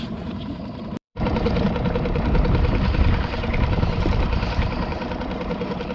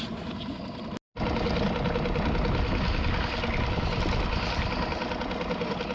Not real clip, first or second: first